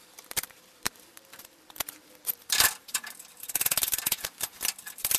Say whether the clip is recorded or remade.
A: remade